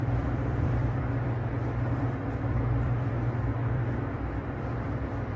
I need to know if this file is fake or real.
fake